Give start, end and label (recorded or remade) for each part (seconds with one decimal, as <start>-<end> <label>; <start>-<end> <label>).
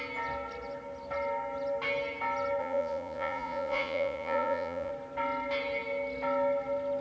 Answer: 0.0-2.6 recorded; 2.6-4.9 remade; 4.9-7.0 recorded